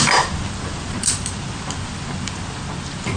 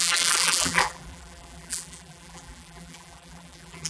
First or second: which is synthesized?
second